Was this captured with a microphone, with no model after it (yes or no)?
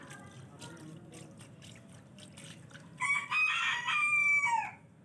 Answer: yes